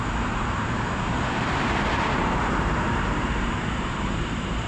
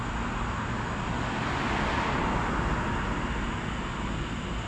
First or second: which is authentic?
second